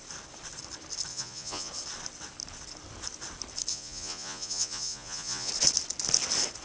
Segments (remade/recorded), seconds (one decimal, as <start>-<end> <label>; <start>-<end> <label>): 0.0-1.1 recorded; 1.1-1.7 remade; 1.7-3.7 recorded; 3.7-5.5 remade; 5.5-6.6 recorded